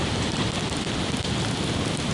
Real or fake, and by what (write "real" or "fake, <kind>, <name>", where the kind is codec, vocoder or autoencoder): real